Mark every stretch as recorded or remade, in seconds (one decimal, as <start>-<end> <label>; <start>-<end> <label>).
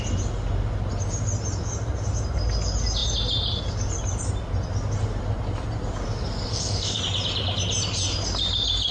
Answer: 0.0-6.5 recorded; 6.5-7.0 remade; 7.0-8.9 recorded